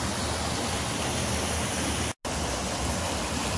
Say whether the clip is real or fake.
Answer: real